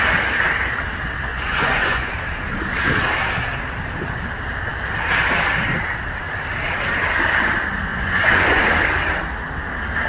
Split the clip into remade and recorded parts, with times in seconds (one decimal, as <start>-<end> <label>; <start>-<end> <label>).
0.0-1.3 recorded; 1.3-2.1 remade; 2.1-7.9 recorded; 7.9-8.6 remade; 8.6-10.1 recorded